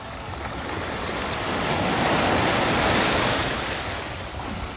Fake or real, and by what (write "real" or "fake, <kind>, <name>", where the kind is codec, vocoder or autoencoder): real